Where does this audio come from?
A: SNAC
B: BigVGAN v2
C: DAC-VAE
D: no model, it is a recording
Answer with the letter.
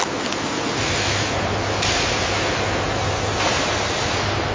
D